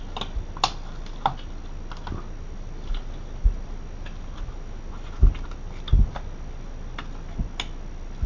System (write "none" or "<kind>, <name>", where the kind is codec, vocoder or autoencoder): none